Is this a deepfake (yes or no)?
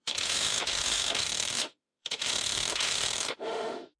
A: yes